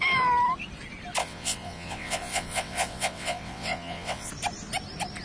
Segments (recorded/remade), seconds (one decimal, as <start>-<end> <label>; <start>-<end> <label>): 0.0-1.2 recorded; 1.2-4.3 remade; 4.3-5.2 recorded